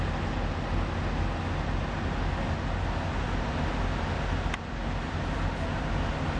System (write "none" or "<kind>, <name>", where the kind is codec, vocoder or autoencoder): none